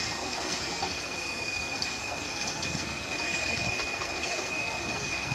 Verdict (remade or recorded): remade